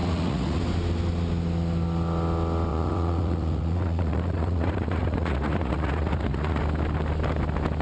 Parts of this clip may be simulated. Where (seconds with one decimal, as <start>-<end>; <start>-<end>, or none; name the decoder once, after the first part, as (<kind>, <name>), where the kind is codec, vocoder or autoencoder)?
0.0-0.6 (vocoder, Vocos); 2.7-6.6